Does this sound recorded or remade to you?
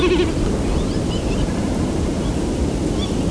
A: recorded